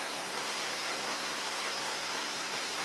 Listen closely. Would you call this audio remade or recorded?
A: remade